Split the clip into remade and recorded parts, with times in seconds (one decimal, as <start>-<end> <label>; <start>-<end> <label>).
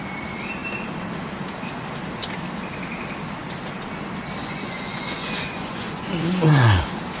0.0-4.4 recorded; 4.4-6.8 remade; 6.8-7.2 recorded